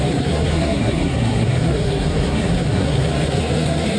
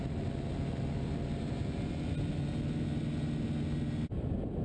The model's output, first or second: first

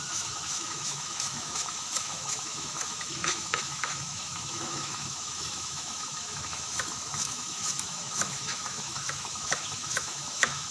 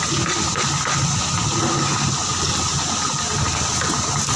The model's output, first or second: first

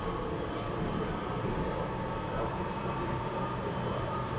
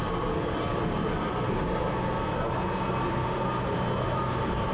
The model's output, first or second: first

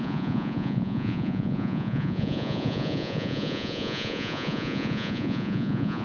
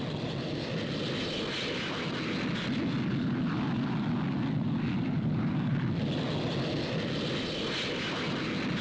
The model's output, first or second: first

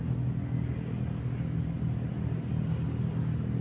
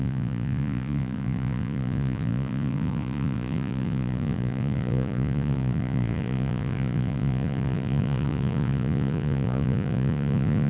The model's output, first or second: second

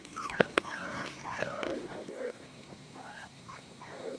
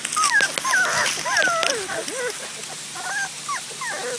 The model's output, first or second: first